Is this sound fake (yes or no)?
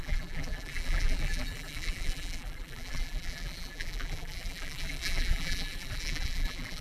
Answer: yes